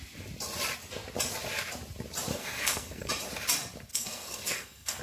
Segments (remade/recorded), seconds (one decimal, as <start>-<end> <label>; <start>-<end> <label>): 0.0-2.3 recorded; 2.3-3.1 remade; 3.1-3.9 recorded; 3.9-5.0 remade

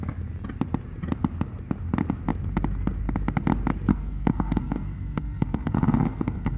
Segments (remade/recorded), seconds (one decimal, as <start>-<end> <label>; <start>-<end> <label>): 0.0-3.9 recorded; 3.9-6.6 remade

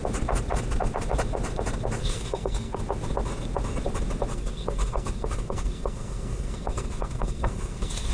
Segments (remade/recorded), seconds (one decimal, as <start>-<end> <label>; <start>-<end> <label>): 0.0-2.0 recorded; 2.0-2.8 remade; 2.8-4.3 recorded; 4.3-8.1 remade

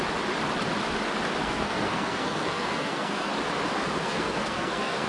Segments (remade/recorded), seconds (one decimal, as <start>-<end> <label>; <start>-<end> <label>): 0.0-1.4 recorded; 1.4-3.3 remade; 3.3-4.0 recorded; 4.0-5.1 remade

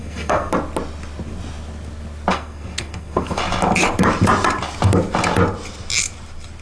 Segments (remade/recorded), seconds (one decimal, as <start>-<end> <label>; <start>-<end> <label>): 0.0-0.5 remade; 0.5-2.3 recorded; 2.3-3.4 remade; 3.4-6.6 recorded

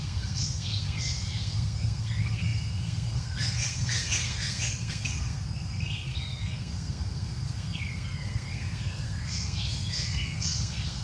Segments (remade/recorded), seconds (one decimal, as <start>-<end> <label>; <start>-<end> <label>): 0.0-11.0 remade

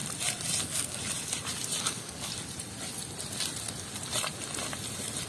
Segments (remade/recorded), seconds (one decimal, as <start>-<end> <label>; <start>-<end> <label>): 0.0-0.6 recorded; 0.6-1.0 remade; 1.0-1.8 recorded; 1.8-2.3 remade; 2.3-5.3 recorded